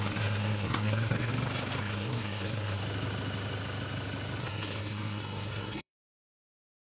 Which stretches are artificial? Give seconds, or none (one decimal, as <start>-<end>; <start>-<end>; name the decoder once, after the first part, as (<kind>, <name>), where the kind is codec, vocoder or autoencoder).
0.0-1.3 (codec, SNAC); 1.8-2.8; 4.4-6.9